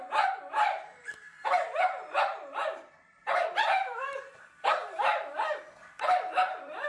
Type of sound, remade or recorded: remade